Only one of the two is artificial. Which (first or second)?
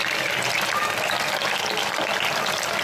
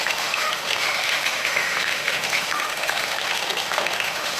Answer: second